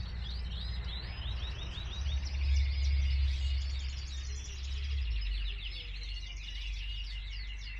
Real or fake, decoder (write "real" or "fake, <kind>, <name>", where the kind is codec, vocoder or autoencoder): real